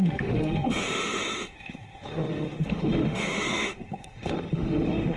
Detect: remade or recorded remade